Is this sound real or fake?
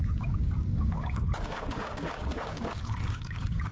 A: fake